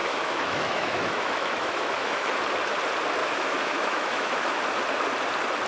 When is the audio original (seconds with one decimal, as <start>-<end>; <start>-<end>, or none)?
2.4-3.2; 4.6-5.7